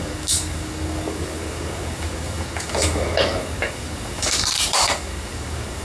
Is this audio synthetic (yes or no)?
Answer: yes